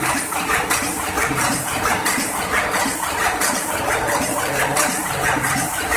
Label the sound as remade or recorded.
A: remade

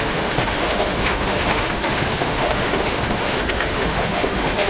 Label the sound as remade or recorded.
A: remade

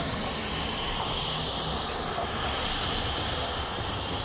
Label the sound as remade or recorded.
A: recorded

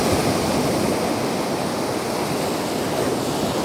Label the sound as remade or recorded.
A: recorded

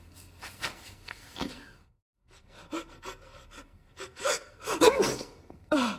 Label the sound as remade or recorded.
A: remade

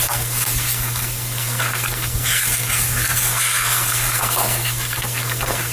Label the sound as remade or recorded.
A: remade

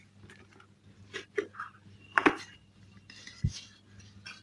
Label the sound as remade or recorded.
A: recorded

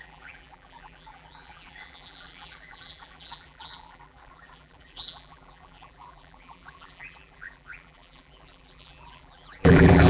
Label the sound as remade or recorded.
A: remade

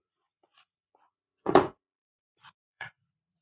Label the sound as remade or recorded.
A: remade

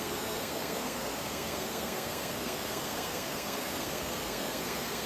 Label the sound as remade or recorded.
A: remade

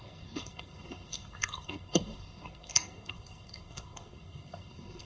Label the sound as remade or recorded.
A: remade